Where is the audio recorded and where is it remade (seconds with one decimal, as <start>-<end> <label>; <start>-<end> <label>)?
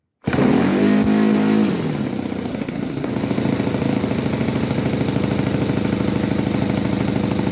0.0-2.5 recorded; 2.5-3.1 remade; 3.1-7.5 recorded